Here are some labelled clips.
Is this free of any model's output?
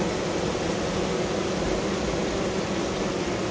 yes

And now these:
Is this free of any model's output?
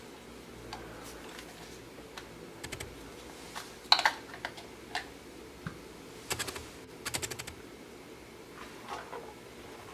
yes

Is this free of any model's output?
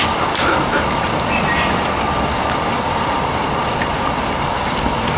no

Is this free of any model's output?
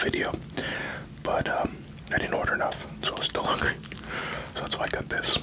yes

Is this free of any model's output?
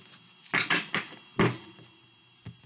yes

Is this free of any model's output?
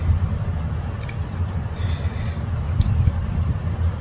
yes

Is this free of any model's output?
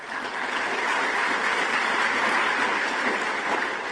yes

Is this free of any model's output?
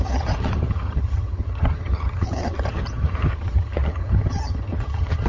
no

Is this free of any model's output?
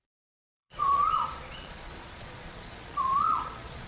no